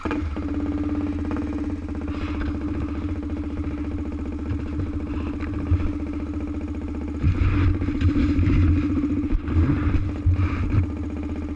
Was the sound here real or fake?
real